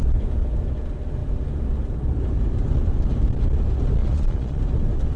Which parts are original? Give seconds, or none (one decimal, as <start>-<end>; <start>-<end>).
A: 0.0-4.0; 4.6-5.2